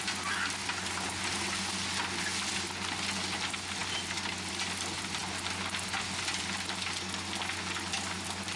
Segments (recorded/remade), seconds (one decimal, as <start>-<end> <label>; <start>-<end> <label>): 0.0-8.6 recorded